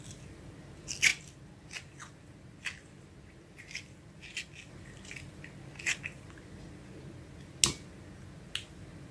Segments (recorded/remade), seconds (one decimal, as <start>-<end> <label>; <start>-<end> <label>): 0.0-9.1 recorded